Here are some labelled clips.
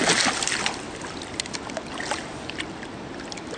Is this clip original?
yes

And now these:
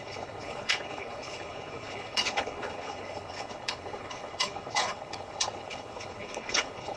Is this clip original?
no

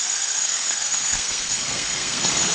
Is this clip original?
no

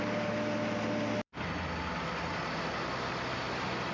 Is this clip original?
yes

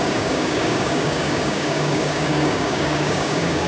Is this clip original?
no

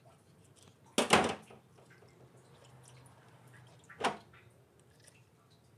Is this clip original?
yes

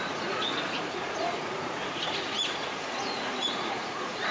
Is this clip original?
no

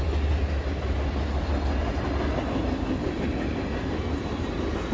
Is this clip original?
yes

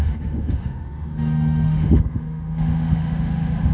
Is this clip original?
no